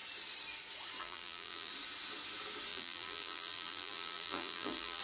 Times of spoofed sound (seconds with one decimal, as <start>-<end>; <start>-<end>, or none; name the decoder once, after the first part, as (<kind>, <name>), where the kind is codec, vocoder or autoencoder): 1.0-1.7 (vocoder, BigVGAN v2); 2.7-5.0